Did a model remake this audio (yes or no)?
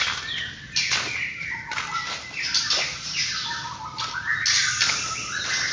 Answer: no